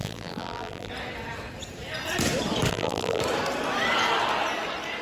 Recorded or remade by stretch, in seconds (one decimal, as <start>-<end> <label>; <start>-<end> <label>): 0.0-0.9 remade; 0.9-2.7 recorded; 2.7-3.2 remade; 3.2-5.0 recorded